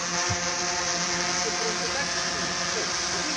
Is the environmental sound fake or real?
real